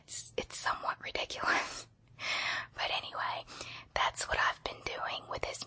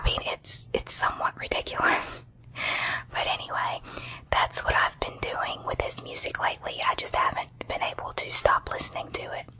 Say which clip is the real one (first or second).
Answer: first